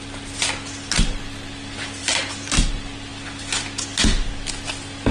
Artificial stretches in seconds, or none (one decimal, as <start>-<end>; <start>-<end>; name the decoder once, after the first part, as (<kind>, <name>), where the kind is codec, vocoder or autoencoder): none